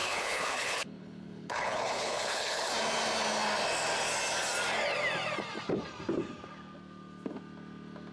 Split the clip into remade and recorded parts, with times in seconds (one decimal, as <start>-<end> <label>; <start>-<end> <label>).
0.0-2.7 remade; 2.7-8.1 recorded

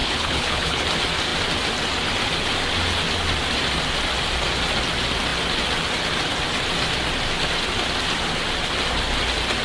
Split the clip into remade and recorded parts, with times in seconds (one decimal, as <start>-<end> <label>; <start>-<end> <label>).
0.0-0.8 remade; 0.8-9.6 recorded

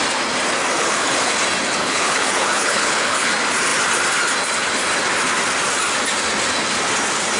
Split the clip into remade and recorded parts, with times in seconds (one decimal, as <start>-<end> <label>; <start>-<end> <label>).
0.0-0.8 recorded; 0.8-1.3 remade; 1.3-1.8 recorded; 1.8-3.3 remade; 3.3-7.4 recorded

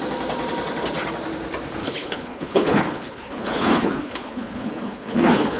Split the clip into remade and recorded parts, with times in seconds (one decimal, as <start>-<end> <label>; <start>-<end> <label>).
0.0-1.8 recorded; 1.8-5.6 remade

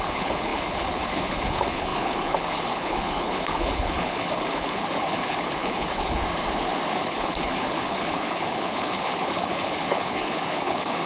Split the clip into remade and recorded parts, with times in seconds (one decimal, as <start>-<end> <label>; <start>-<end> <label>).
0.0-6.2 remade; 6.2-6.9 recorded; 6.9-11.1 remade

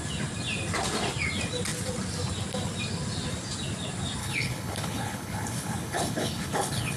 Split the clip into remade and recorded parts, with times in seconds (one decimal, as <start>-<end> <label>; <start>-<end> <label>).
0.0-4.2 recorded; 4.2-7.0 remade

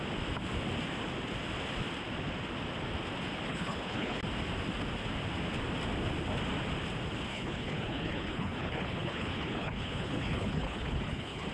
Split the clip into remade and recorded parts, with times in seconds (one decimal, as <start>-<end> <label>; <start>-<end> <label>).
0.0-3.5 recorded; 3.5-4.2 remade; 4.2-7.3 recorded; 7.3-11.5 remade

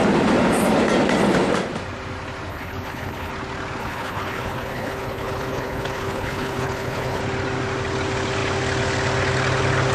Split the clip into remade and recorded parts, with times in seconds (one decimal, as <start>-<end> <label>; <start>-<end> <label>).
0.0-2.5 recorded; 2.5-3.3 remade; 3.3-3.8 recorded; 3.8-7.2 remade; 7.2-9.9 recorded